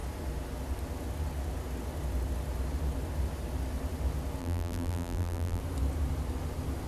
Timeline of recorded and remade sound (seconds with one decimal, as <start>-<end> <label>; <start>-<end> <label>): 0.0-4.4 recorded; 4.4-5.6 remade; 5.6-6.9 recorded